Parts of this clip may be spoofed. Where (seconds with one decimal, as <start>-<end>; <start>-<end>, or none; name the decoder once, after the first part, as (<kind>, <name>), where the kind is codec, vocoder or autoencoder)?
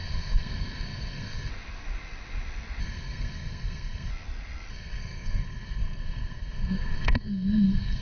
0.0-1.5 (codec, SNAC); 2.8-4.1; 4.7-8.0